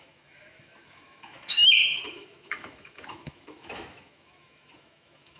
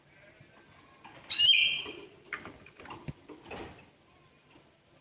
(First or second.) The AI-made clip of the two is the first